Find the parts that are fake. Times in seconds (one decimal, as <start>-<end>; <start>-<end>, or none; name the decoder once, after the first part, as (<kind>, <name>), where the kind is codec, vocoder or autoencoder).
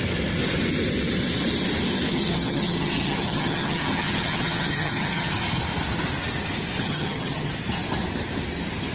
2.1-5.3 (vocoder, HiFi-GAN); 6.8-7.5